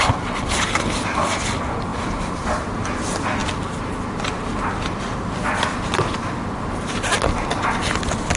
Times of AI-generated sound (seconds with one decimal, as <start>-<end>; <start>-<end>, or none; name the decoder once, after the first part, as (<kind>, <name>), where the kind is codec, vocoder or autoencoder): 1.9-3.0 (vocoder, BigVGAN v2)